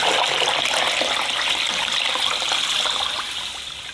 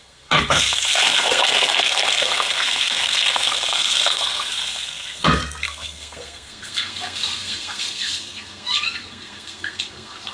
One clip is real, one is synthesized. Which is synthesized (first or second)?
second